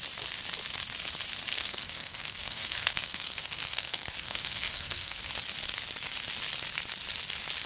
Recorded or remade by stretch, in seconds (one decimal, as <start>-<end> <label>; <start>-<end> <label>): 0.0-1.5 recorded; 1.5-5.2 remade; 5.2-7.7 recorded